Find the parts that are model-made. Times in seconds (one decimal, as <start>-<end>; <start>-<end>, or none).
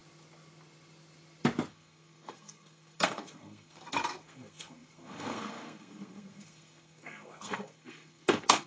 1.7-8.7